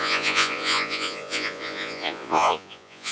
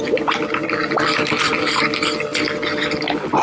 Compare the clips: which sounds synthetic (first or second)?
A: first